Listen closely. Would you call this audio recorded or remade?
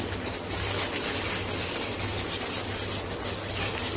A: recorded